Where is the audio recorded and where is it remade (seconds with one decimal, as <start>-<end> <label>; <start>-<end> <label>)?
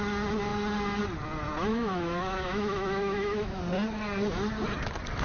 0.0-1.7 recorded; 1.7-3.6 remade; 3.6-5.2 recorded